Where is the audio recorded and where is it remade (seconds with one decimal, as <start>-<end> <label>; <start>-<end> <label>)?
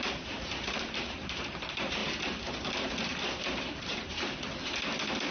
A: 0.0-2.0 remade; 2.0-3.8 recorded; 3.8-5.3 remade